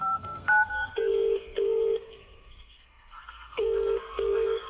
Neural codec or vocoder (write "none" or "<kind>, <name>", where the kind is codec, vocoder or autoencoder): codec, SNAC